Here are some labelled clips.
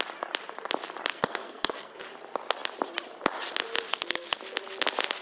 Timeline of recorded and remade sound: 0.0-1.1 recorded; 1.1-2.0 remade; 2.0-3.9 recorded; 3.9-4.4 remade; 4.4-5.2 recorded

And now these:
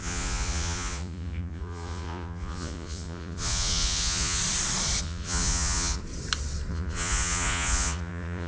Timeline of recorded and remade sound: 0.0-4.4 remade; 4.4-5.0 recorded; 5.0-6.0 remade; 6.0-6.7 recorded; 6.7-8.5 remade

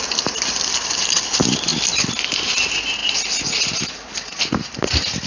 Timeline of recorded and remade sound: 0.0-5.3 recorded

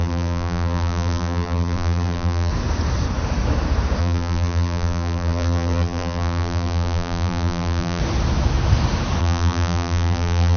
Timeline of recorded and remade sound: 0.0-2.5 remade; 2.5-4.0 recorded; 4.0-8.0 remade; 8.0-9.2 recorded; 9.2-10.6 remade

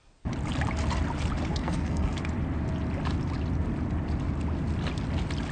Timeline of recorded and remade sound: 0.0-1.5 recorded; 1.5-2.2 remade; 2.2-5.5 recorded

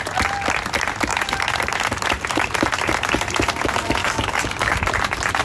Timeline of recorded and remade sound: 0.0-4.0 recorded; 4.0-4.8 remade; 4.8-5.4 recorded

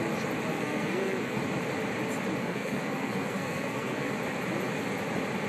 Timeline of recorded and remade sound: 0.0-0.5 recorded; 0.5-1.4 remade; 1.4-2.4 recorded; 2.4-4.1 remade; 4.1-5.5 recorded

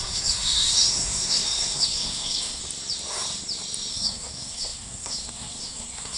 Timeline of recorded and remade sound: 0.0-2.6 remade; 2.6-3.9 recorded; 3.9-6.2 remade